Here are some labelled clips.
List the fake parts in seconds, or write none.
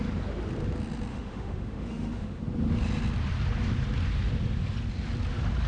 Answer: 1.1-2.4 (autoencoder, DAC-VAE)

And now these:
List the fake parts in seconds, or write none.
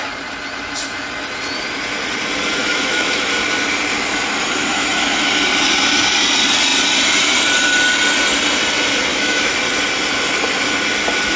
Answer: 2.6-3.3 (autoencoder, DAC-VAE); 4.7-5.3; 9.1-9.6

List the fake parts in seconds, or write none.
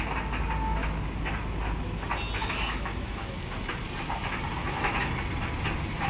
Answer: 2.4-3.8 (autoencoder, DAC-VAE); 4.6-5.2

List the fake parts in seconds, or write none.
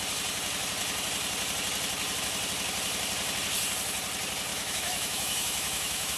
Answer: 4.5-6.2 (autoencoder, DAC-VAE)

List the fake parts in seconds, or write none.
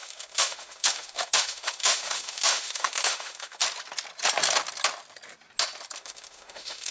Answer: 0.0-3.6 (autoencoder, DAC-VAE); 6.0-6.9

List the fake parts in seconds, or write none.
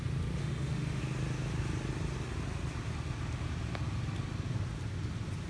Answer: 0.4-1.0 (autoencoder, DAC-VAE)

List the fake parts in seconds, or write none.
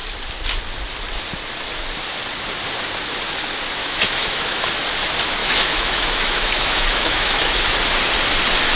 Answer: 3.8-4.6 (autoencoder, DAC-VAE); 5.4-7.6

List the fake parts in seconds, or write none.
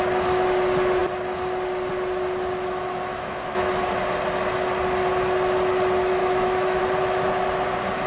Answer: 3.1-3.7 (autoencoder, DAC-VAE); 6.2-6.8